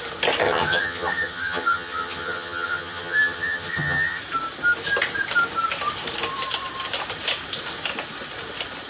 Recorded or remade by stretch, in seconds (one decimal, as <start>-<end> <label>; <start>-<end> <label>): 0.0-0.4 recorded; 0.4-4.2 remade; 4.2-8.9 recorded